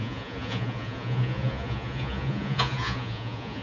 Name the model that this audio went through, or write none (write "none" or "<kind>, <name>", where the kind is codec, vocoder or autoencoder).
vocoder, Vocos